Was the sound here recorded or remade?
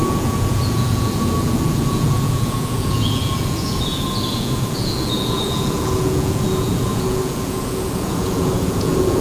remade